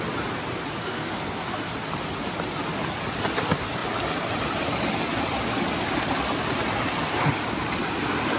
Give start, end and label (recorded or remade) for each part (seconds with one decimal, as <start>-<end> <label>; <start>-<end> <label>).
0.0-0.8 recorded; 0.8-1.7 remade; 1.7-8.4 recorded

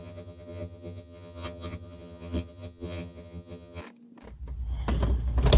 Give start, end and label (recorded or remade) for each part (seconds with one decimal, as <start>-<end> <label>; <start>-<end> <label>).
0.0-3.8 remade; 3.8-5.6 recorded

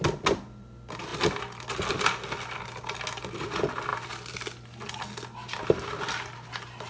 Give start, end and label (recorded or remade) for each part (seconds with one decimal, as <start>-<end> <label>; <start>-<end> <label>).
0.0-6.9 recorded

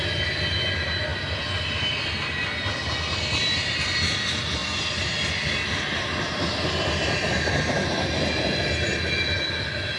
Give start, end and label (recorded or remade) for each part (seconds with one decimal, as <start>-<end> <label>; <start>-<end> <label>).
0.0-10.0 recorded

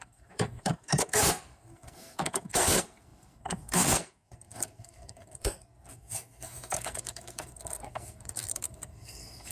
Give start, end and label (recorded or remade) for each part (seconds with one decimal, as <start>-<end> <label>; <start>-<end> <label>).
0.0-9.5 remade

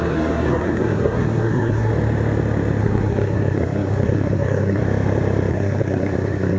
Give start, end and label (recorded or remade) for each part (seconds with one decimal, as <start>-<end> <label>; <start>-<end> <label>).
0.0-1.9 remade; 1.9-2.8 recorded; 2.8-4.8 remade; 4.8-5.5 recorded; 5.5-6.6 remade

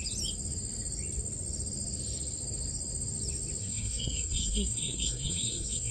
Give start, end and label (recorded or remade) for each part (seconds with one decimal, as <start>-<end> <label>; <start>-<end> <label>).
0.0-3.6 recorded; 3.6-5.9 remade

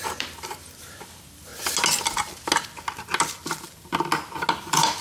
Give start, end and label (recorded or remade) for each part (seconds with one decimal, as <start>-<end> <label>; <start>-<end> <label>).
0.0-1.5 remade; 1.5-4.5 recorded; 4.5-5.0 remade